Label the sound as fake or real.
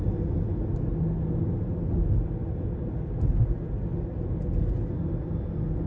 real